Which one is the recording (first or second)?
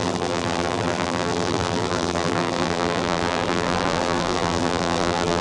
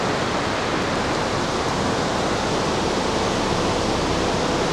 second